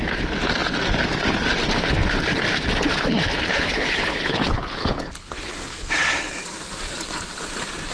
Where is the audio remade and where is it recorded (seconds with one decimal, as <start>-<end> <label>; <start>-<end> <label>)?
0.0-3.5 recorded; 3.5-5.9 remade; 5.9-7.9 recorded